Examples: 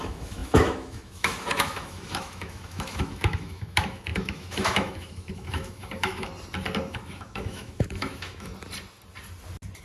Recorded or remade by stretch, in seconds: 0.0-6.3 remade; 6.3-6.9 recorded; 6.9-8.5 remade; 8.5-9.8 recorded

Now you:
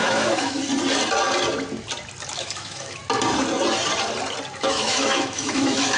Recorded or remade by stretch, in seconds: 0.0-0.6 remade; 0.6-2.3 recorded; 2.3-3.0 remade; 3.0-4.6 recorded; 4.6-6.0 remade

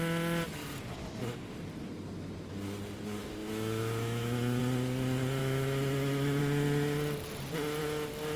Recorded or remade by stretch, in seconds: 0.0-3.2 recorded; 3.2-4.6 remade; 4.6-5.4 recorded; 5.4-6.4 remade; 6.4-8.4 recorded

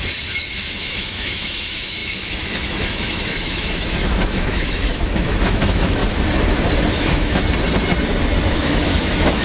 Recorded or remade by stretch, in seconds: 0.0-6.0 remade; 6.0-6.9 recorded; 6.9-7.4 remade; 7.4-8.5 recorded; 8.5-9.4 remade

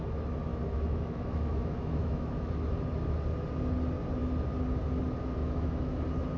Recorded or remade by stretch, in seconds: 0.0-0.5 recorded; 0.5-2.5 remade; 2.5-5.4 recorded; 5.4-6.0 remade; 6.0-6.4 recorded

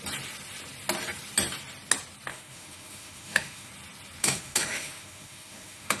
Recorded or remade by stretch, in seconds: 0.0-2.3 recorded; 2.3-3.7 remade; 3.7-4.2 recorded; 4.2-6.0 remade

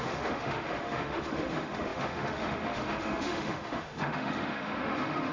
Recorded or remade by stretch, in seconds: 0.0-5.3 remade

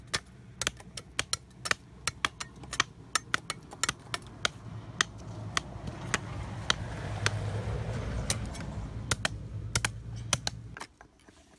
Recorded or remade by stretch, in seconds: 0.0-11.6 recorded